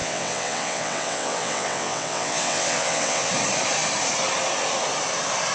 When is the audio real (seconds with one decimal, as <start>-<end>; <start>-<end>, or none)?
3.3-5.5